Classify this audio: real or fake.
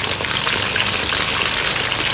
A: real